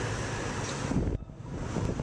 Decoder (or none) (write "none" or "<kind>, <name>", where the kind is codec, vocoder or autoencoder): none